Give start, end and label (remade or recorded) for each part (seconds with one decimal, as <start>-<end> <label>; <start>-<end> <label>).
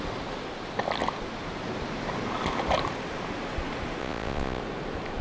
0.0-4.0 recorded; 4.0-4.6 remade; 4.6-5.2 recorded